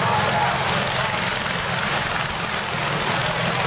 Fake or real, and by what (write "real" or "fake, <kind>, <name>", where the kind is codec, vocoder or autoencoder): real